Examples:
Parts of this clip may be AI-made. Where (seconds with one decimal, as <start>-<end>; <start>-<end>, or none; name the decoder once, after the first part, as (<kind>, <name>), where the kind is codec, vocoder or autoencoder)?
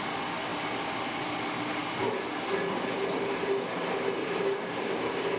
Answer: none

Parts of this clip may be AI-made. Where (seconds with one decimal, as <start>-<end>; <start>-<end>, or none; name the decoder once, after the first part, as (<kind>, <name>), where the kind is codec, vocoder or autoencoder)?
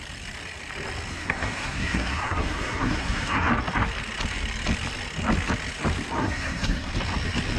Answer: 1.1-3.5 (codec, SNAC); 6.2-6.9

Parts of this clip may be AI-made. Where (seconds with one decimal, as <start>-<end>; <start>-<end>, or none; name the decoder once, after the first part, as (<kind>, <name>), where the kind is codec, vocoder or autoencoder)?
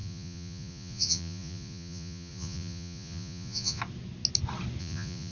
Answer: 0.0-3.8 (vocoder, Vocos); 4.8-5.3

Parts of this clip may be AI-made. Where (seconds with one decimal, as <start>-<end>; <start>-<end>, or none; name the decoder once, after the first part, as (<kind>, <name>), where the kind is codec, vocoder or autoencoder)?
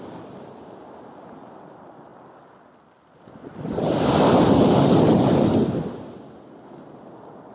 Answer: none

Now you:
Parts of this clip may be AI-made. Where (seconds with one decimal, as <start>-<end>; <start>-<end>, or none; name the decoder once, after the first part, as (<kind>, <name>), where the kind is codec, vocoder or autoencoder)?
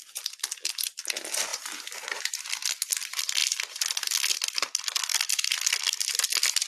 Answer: 1.5-2.3 (vocoder, BigVGAN v2)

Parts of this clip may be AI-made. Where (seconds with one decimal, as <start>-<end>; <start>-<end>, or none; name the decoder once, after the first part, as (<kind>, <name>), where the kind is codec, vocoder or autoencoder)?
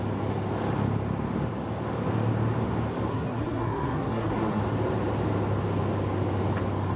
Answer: 3.1-4.6 (codec, SNAC)